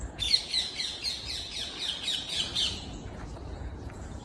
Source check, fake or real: fake